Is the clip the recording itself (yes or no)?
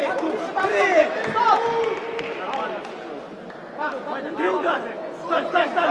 yes